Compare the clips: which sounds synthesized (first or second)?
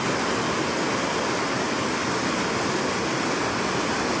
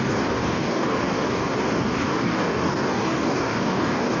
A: second